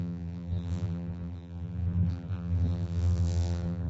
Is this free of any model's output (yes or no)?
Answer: no